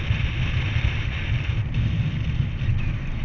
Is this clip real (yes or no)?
yes